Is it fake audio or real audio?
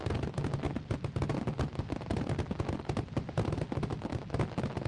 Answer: real